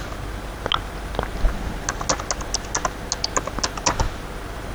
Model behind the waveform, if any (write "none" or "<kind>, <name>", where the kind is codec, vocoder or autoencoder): none